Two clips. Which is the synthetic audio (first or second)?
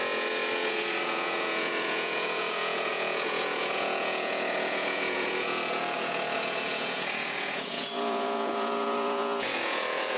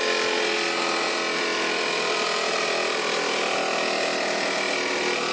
first